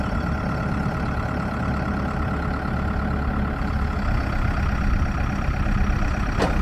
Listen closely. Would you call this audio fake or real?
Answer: real